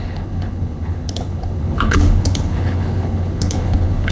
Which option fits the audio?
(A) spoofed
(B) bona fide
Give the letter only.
A